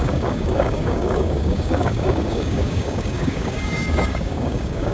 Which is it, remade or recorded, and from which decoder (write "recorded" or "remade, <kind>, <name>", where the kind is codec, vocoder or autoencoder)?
remade, codec, DAC